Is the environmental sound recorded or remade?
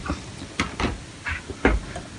recorded